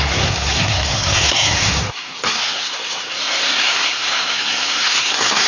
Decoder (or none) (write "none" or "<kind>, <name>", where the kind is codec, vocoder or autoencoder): codec, SNAC